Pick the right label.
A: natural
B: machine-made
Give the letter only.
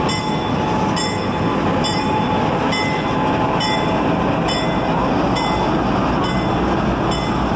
A